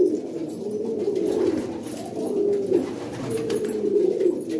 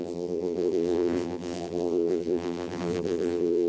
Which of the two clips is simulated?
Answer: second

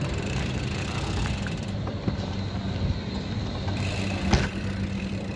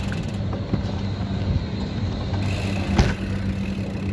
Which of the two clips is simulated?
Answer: first